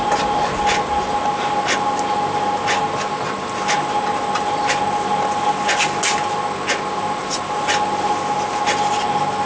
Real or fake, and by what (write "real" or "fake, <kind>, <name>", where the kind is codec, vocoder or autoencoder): real